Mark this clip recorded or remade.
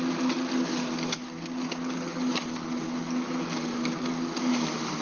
recorded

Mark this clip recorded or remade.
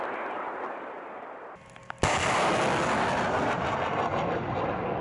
recorded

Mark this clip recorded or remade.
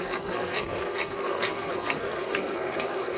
remade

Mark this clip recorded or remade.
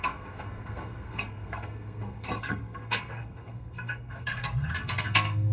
remade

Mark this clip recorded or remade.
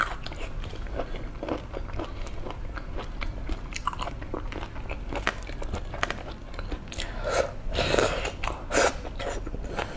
recorded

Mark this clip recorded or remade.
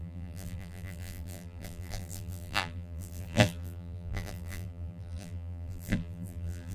remade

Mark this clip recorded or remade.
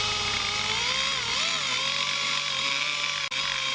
recorded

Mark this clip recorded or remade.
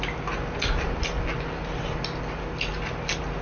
recorded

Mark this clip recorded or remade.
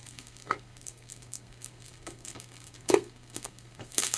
remade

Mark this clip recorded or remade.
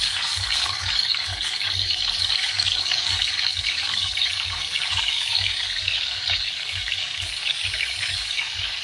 remade